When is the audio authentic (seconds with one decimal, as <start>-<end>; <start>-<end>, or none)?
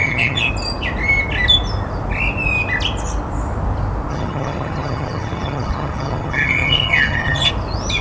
0.5-4.1; 7.5-8.0